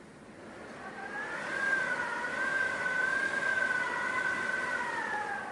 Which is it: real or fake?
real